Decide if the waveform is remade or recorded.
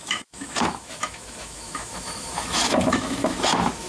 remade